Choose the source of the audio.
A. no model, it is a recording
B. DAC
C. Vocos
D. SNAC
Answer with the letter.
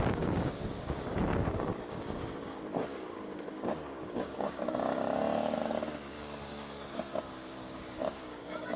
B